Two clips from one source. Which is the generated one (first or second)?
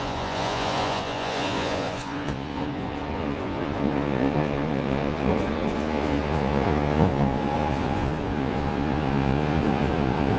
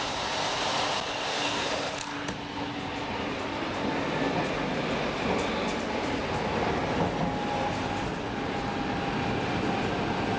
first